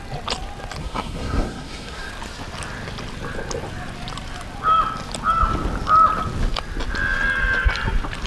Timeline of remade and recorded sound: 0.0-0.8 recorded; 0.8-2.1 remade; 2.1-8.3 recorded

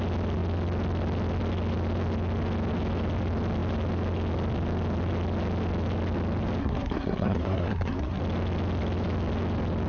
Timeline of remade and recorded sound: 0.0-6.6 recorded; 6.6-8.2 remade; 8.2-9.9 recorded